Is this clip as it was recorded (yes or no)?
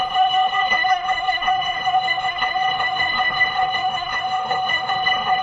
no